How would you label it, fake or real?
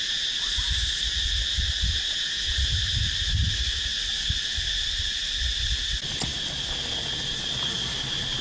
real